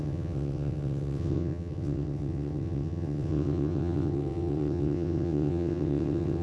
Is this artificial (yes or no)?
yes